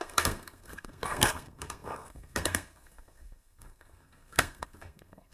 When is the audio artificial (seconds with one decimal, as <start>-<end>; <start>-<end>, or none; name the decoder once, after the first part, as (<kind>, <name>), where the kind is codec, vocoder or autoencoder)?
0.0-5.3 (codec, SNAC)